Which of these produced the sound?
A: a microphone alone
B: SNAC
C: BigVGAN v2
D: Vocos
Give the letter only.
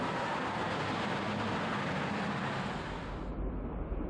A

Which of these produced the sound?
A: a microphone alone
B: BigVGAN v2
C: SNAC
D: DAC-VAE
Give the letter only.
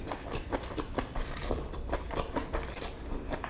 B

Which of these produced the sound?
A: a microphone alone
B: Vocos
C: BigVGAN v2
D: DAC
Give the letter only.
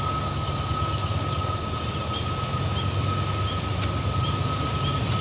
A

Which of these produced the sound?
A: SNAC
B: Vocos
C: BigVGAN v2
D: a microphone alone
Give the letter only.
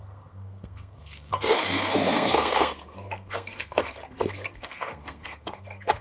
A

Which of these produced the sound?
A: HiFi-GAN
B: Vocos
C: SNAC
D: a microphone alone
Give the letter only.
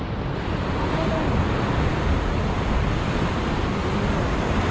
D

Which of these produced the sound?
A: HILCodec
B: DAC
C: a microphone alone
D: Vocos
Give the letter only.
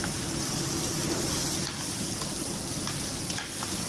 C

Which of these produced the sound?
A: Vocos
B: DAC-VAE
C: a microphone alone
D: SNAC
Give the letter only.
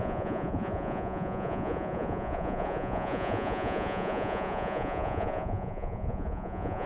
A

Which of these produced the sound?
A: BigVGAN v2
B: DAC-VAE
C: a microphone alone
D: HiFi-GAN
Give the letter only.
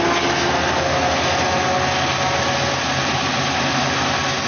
C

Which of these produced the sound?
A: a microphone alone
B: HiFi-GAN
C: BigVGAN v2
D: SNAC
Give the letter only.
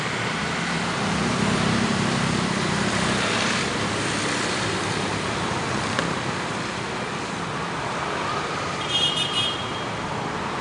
C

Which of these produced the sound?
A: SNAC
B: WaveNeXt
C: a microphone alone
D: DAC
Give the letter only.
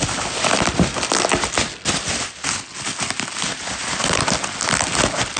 C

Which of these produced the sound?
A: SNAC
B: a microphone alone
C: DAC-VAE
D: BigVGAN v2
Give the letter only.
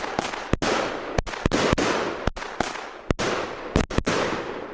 B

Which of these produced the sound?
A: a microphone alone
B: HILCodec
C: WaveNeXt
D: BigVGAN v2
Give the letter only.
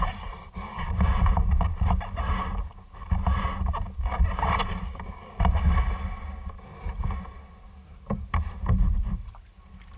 A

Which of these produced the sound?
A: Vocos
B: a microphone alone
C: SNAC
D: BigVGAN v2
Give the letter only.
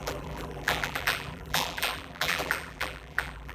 D